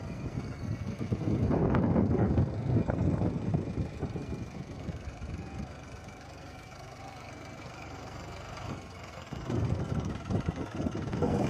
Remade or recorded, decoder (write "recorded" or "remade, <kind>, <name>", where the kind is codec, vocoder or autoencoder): remade, codec, SNAC